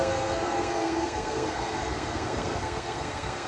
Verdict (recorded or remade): remade